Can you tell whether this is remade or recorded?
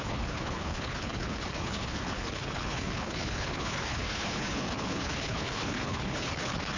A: remade